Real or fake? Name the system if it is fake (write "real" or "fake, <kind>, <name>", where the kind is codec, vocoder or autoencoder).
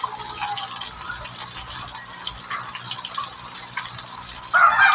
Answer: real